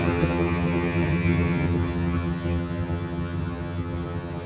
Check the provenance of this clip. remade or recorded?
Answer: remade